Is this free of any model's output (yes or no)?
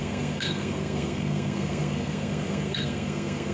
no